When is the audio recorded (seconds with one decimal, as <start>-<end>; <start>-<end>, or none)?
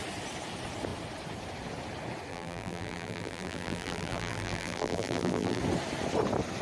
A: 0.0-2.3; 5.6-6.6